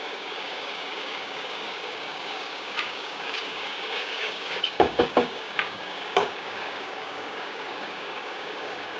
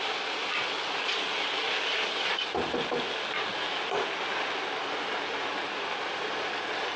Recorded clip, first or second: second